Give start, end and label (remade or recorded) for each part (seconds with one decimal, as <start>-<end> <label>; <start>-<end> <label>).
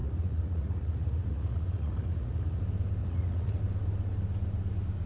0.0-2.6 remade; 2.6-3.0 recorded; 3.0-3.6 remade; 3.6-5.1 recorded